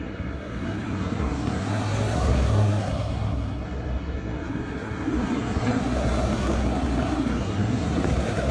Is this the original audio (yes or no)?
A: no